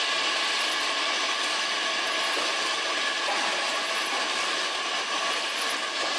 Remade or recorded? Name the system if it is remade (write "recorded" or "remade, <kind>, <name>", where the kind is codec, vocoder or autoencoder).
recorded